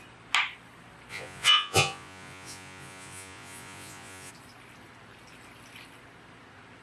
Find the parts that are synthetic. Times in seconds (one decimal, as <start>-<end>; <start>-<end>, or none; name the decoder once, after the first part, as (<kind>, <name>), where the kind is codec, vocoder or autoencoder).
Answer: 1.1-4.3 (vocoder, Vocos)